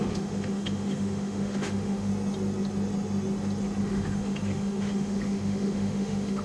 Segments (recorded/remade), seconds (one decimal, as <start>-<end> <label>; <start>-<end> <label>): 0.0-2.1 remade; 2.1-3.8 recorded; 3.8-6.4 remade